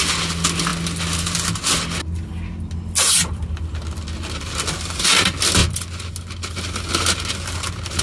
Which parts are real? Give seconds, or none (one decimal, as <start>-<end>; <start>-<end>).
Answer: 0.0-8.0